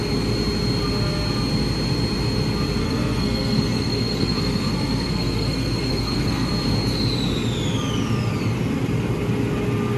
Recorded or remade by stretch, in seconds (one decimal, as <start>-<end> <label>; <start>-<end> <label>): 0.0-2.8 recorded; 2.8-6.5 remade; 6.5-10.0 recorded